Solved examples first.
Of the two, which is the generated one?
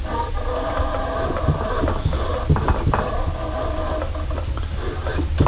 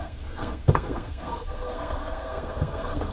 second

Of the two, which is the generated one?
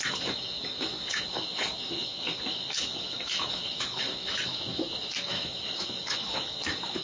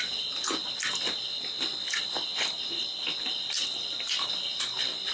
first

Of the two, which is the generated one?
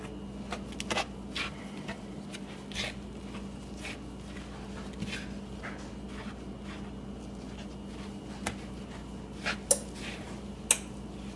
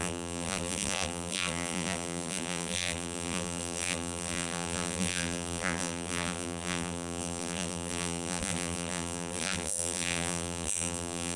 second